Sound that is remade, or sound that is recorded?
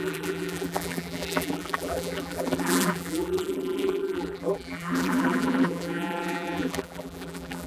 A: remade